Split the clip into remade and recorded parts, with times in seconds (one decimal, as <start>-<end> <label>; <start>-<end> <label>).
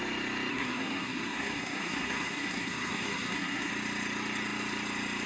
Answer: 0.0-0.5 recorded; 0.5-3.7 remade; 3.7-5.3 recorded